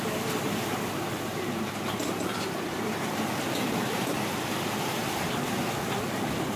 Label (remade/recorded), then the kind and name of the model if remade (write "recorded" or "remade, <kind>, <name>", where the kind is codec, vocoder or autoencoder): remade, vocoder, BigVGAN v2